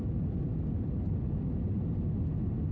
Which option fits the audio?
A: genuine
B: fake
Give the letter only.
A